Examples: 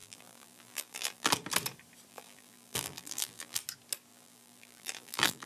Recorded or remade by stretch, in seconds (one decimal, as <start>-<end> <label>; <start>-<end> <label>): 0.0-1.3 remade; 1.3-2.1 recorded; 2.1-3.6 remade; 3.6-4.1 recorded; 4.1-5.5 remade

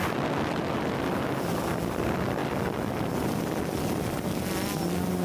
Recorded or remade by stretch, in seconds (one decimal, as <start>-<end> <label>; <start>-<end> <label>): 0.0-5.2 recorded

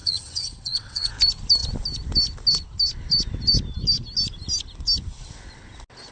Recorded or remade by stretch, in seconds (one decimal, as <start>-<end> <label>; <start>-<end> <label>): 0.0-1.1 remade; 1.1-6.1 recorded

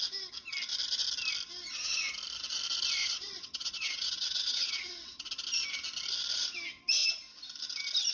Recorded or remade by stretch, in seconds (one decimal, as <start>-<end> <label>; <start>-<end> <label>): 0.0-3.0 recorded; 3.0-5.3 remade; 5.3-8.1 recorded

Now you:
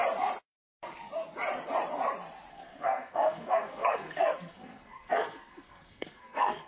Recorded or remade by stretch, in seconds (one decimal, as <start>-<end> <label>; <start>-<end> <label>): 0.0-2.5 recorded; 2.5-6.7 remade